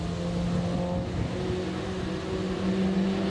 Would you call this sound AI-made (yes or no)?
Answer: no